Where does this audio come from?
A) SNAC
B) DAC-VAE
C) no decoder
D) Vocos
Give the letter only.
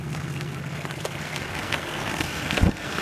A